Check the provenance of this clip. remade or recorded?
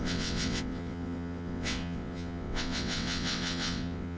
remade